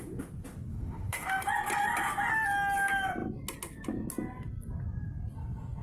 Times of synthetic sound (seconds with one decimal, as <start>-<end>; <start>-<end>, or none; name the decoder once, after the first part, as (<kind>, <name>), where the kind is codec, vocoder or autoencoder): 0.7-1.4 (autoencoder, DAC-VAE)